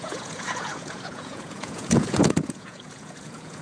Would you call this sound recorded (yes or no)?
no